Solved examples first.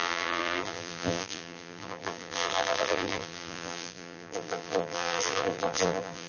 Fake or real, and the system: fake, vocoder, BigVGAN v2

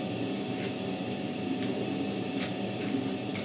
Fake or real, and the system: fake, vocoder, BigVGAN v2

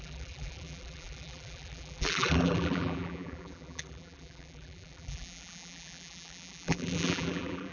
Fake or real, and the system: fake, vocoder, BigVGAN v2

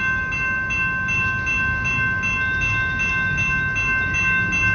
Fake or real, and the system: real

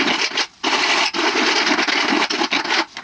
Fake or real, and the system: real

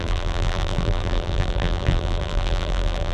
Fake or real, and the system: fake, vocoder, BigVGAN v2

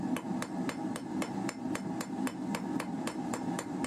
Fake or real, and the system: fake, vocoder, BigVGAN v2